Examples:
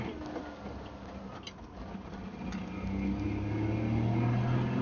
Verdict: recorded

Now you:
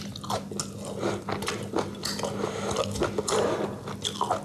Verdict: recorded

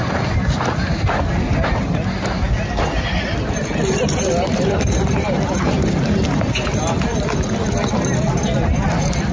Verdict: recorded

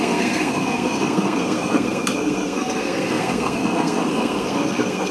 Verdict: remade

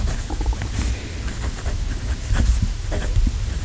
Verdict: recorded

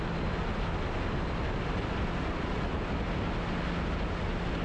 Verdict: recorded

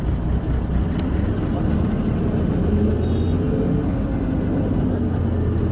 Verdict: recorded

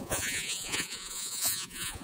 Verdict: remade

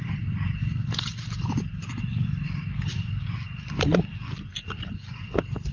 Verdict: recorded